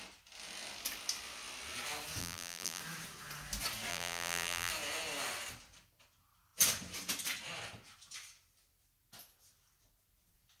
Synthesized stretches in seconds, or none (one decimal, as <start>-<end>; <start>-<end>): 2.2-2.8; 3.9-4.7